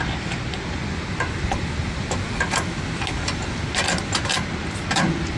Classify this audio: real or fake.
real